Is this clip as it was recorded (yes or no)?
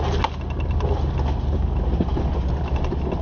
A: yes